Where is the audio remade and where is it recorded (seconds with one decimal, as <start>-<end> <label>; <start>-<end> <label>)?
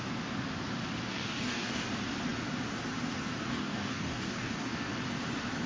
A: 0.0-1.1 recorded; 1.1-1.8 remade; 1.8-3.5 recorded; 3.5-4.7 remade; 4.7-5.7 recorded